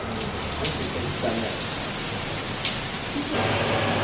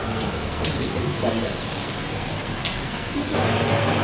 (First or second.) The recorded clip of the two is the first